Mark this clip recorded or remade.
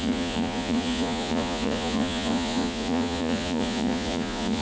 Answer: remade